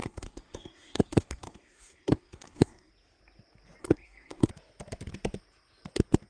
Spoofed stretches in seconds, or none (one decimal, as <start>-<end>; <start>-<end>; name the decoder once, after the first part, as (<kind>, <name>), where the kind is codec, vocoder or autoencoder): 0.0-2.9 (codec, SNAC); 3.8-4.5